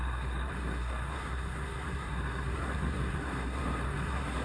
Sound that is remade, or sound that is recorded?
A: remade